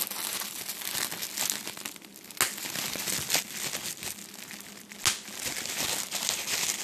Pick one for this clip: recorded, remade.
recorded